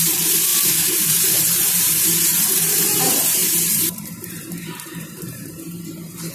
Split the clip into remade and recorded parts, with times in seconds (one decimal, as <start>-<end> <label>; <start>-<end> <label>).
0.0-6.3 remade